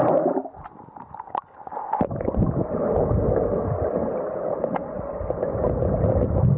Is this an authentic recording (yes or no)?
yes